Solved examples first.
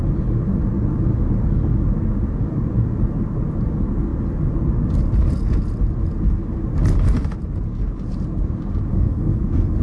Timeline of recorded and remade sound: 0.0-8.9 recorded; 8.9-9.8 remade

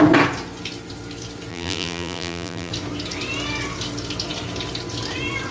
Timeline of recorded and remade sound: 0.0-1.5 recorded; 1.5-2.7 remade; 2.7-5.5 recorded

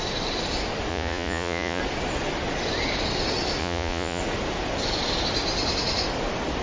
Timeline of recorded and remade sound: 0.0-0.9 recorded; 0.9-1.8 remade; 1.8-3.6 recorded; 3.6-4.2 remade; 4.2-6.6 recorded

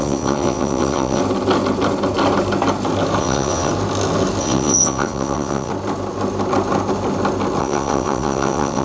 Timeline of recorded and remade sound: 0.0-1.2 remade; 1.2-3.2 recorded; 3.2-3.7 remade; 3.7-4.4 recorded; 4.4-5.7 remade; 5.7-7.6 recorded; 7.6-8.8 remade

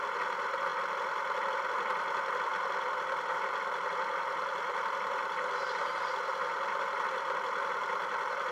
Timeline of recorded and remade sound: 0.0-0.7 remade; 0.7-1.5 recorded; 1.5-2.5 remade; 2.5-3.3 recorded; 3.3-6.3 remade; 6.3-6.8 recorded; 6.8-8.5 remade

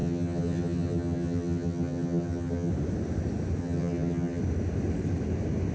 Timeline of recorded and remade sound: 0.0-2.7 remade; 2.7-3.6 recorded; 3.6-4.4 remade; 4.4-5.7 recorded

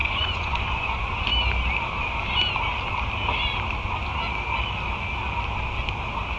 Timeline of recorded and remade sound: 0.0-1.3 remade; 1.3-6.4 recorded

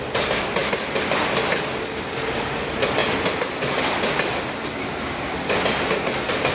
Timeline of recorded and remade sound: 0.0-6.5 recorded